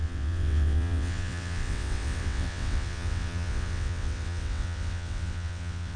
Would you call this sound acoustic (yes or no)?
no